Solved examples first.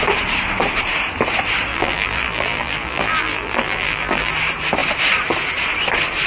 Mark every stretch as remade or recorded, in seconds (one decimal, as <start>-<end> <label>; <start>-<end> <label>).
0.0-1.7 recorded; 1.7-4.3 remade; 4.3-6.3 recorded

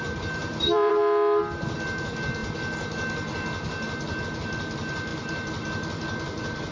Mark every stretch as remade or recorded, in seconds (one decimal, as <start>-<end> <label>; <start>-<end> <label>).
0.0-0.4 recorded; 0.4-0.9 remade; 0.9-5.1 recorded; 5.1-6.7 remade

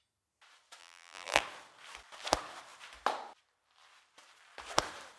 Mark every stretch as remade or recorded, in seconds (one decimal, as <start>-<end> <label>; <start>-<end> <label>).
0.0-0.8 recorded; 0.8-1.4 remade; 1.4-5.2 recorded

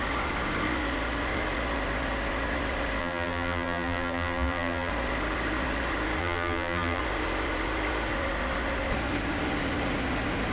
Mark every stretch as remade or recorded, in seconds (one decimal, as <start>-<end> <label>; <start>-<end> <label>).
0.0-3.0 recorded; 3.0-4.9 remade; 4.9-6.2 recorded; 6.2-7.0 remade; 7.0-10.5 recorded

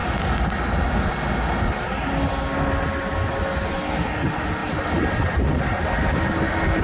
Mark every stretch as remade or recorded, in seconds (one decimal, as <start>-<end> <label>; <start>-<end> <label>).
0.0-4.6 recorded; 4.6-6.3 remade; 6.3-6.8 recorded

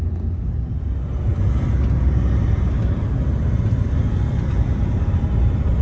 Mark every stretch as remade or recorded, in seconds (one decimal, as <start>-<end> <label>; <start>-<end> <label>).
0.0-5.8 recorded

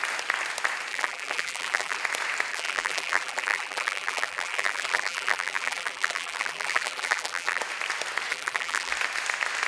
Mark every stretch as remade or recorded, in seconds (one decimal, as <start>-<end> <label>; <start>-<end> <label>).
0.0-0.9 recorded; 0.9-2.0 remade; 2.0-2.5 recorded; 2.5-7.6 remade; 7.6-8.3 recorded; 8.3-8.9 remade; 8.9-9.7 recorded